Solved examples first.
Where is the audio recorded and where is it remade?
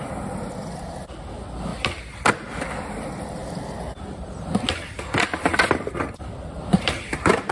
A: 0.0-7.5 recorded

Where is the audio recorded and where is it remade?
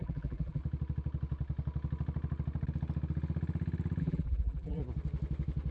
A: 0.0-0.6 remade; 0.6-4.0 recorded; 4.0-4.8 remade; 4.8-5.7 recorded